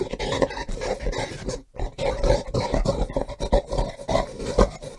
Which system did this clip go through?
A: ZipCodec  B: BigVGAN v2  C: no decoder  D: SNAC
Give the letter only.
C